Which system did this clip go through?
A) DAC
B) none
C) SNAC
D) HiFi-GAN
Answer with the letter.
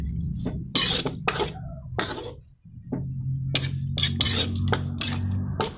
B